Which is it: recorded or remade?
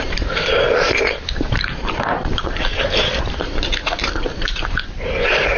remade